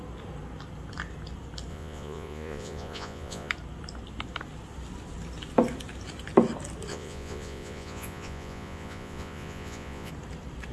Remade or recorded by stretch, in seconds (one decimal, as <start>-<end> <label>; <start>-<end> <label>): 0.0-1.7 recorded; 1.7-3.5 remade; 3.5-6.9 recorded; 6.9-10.1 remade; 10.1-10.7 recorded